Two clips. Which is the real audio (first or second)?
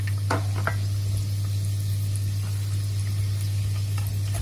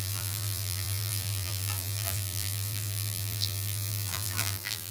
first